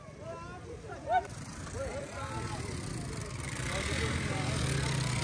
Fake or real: real